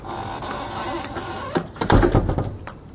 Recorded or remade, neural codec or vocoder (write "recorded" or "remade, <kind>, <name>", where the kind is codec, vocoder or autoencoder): recorded